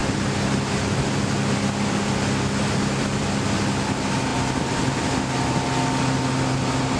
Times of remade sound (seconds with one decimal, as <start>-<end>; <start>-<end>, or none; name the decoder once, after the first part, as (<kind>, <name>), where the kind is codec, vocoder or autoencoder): none